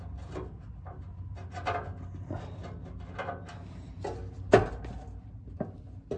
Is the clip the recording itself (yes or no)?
yes